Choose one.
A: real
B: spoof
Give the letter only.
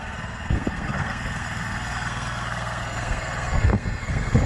B